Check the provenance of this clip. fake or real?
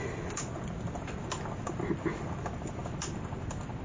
real